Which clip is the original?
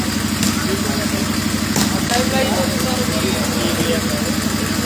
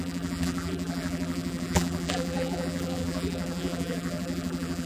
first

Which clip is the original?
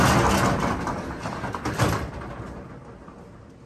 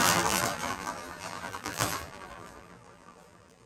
first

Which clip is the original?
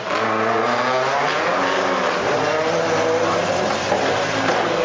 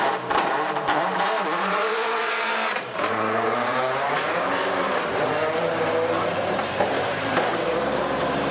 first